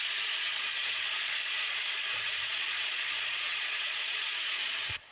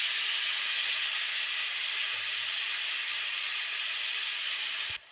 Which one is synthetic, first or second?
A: first